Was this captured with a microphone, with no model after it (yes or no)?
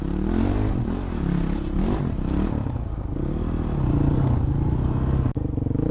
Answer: yes